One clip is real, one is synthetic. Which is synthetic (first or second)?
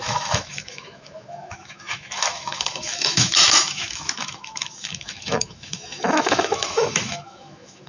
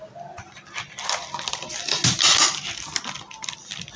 first